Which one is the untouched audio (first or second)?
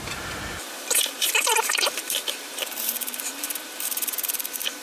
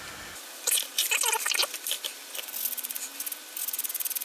second